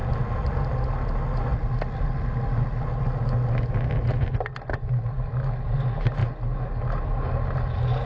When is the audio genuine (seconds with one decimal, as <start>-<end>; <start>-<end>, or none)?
0.0-8.1